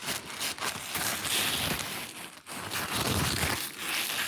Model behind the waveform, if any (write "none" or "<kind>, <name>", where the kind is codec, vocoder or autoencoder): none